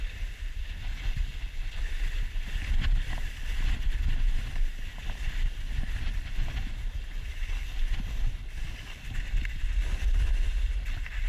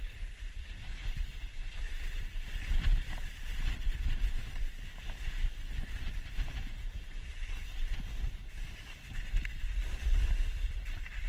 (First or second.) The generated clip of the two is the second